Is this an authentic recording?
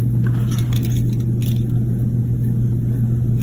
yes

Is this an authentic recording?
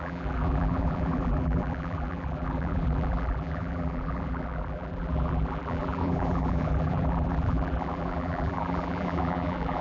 no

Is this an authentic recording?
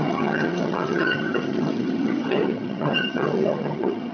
no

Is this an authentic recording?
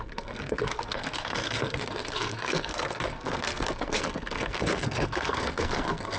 no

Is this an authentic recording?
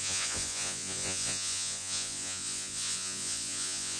no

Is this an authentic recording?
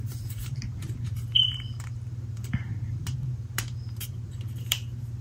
no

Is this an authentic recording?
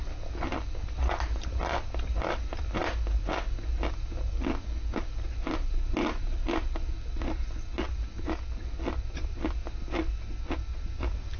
yes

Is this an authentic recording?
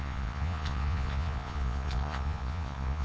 no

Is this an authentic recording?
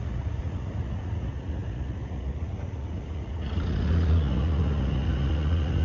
no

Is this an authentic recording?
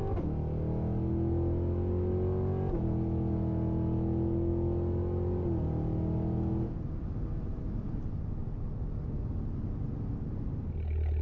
yes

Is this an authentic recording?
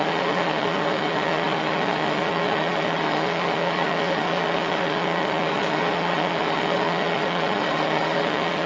no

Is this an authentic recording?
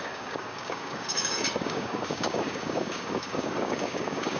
no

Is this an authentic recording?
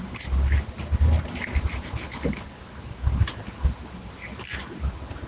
yes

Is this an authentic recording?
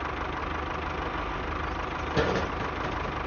yes